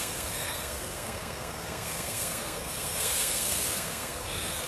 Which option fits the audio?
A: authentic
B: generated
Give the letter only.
B